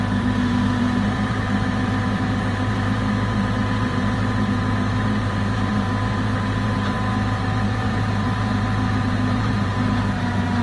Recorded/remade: remade